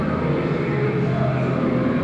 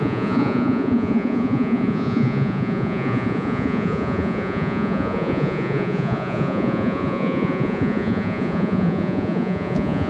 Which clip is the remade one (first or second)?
second